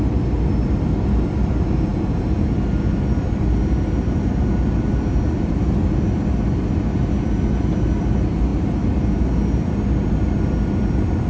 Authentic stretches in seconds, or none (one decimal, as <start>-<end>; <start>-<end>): 0.0-11.3